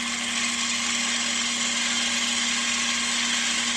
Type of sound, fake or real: real